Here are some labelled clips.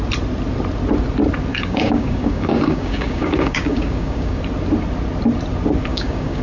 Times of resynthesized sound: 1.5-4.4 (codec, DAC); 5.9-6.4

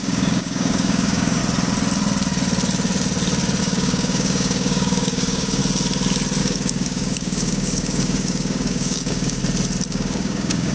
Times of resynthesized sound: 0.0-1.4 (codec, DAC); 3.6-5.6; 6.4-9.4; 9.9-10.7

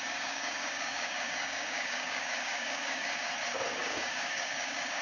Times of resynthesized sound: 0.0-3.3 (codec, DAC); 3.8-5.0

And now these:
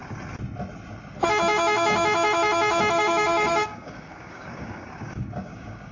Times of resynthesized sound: 2.9-5.9 (codec, DAC)

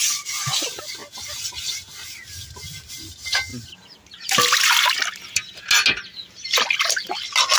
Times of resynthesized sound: none